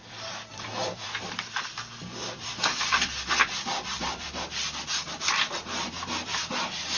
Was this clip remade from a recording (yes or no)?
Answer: yes